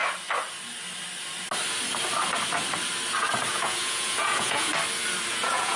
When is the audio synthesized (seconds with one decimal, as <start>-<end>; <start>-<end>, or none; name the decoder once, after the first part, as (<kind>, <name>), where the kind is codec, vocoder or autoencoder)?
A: 3.5-4.7 (vocoder, Vocos); 5.3-5.8